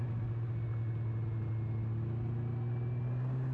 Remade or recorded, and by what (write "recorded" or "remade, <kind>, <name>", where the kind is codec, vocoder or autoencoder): recorded